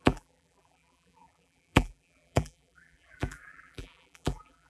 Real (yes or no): no